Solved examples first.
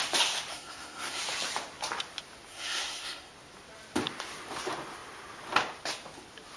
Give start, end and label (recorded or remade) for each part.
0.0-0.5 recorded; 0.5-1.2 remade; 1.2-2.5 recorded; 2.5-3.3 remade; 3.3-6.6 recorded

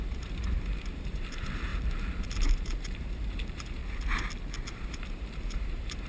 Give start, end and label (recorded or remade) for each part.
0.0-3.8 remade; 3.8-4.7 recorded; 4.7-6.1 remade

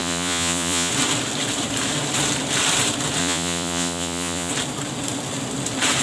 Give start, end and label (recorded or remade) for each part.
0.0-0.9 remade; 0.9-3.2 recorded; 3.2-4.5 remade; 4.5-6.0 recorded